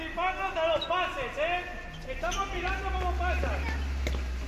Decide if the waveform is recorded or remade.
recorded